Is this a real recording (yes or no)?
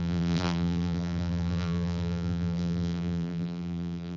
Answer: no